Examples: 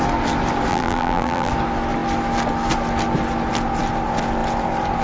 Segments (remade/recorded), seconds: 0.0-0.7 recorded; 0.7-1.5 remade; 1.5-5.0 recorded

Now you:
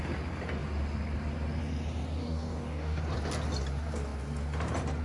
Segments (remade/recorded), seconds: 0.0-2.2 recorded; 2.2-3.0 remade; 3.0-5.0 recorded

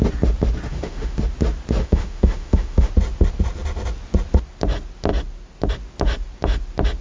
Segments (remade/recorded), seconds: 0.0-0.7 recorded; 0.7-1.2 remade; 1.2-1.8 recorded; 1.8-2.9 remade; 2.9-7.0 recorded

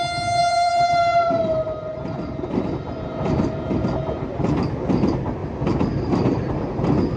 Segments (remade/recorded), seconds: 0.0-0.4 recorded; 0.4-4.4 remade; 4.4-5.4 recorded; 5.4-6.6 remade; 6.6-7.2 recorded

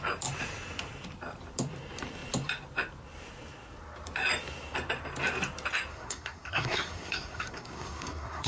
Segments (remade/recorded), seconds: 0.0-5.9 recorded; 5.9-8.5 remade

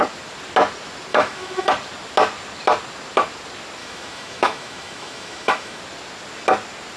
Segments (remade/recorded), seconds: 0.0-1.1 recorded; 1.1-1.7 remade; 1.7-3.8 recorded; 3.8-5.8 remade; 5.8-7.0 recorded

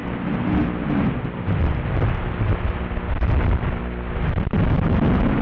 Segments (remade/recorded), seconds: 0.0-5.4 recorded

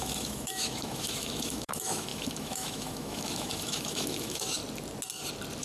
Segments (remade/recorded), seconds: 0.0-4.6 remade; 4.6-5.6 recorded